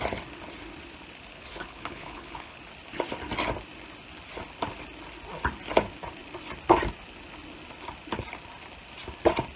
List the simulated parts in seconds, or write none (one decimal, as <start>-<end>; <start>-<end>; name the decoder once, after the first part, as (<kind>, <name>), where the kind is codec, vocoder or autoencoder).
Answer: 1.3-2.6 (codec, HILCodec)